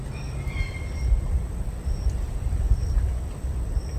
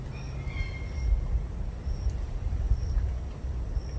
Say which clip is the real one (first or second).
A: second